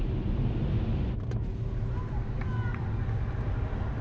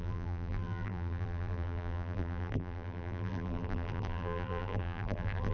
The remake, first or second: second